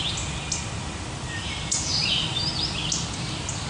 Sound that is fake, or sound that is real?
fake